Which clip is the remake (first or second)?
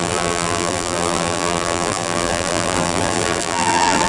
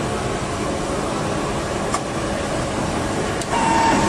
first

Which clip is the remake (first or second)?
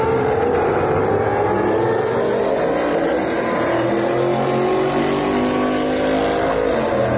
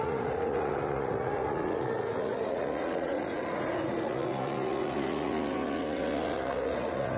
second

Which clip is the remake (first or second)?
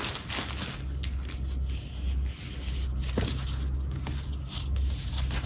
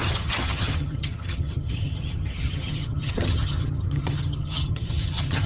second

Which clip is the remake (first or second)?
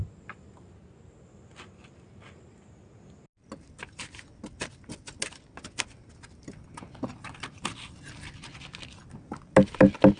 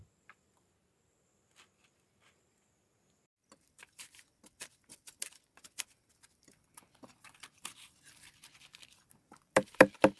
second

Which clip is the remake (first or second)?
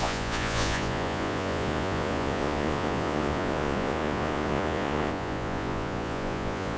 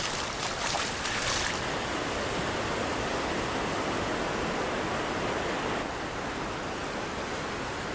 first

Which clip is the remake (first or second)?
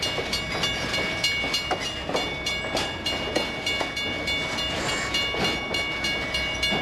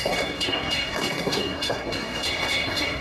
second